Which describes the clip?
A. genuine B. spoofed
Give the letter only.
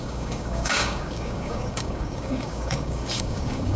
B